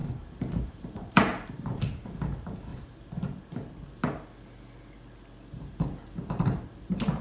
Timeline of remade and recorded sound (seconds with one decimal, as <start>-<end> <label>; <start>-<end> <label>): 0.0-1.8 remade; 1.8-2.7 recorded; 2.7-3.7 remade; 3.7-7.2 recorded